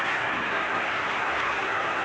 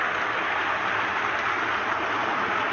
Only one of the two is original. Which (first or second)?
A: second